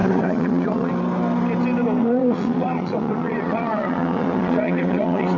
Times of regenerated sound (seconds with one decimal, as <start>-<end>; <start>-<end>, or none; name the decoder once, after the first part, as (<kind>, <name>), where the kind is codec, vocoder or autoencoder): 0.0-0.9 (vocoder, Vocos); 2.0-5.4